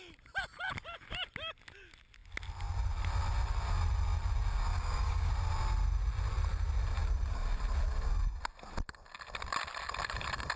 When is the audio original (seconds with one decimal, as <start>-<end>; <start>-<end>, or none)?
0.0-4.7; 5.3-10.6